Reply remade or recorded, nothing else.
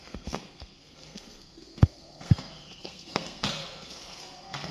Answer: remade